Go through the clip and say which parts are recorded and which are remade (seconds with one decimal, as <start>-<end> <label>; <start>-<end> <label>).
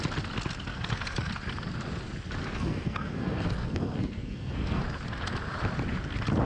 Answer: 0.0-0.7 recorded; 0.7-1.3 remade; 1.3-2.4 recorded; 2.4-4.8 remade; 4.8-6.5 recorded